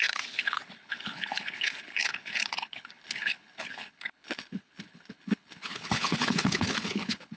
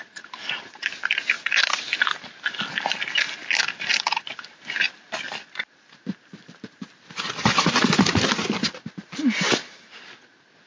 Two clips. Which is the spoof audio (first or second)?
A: first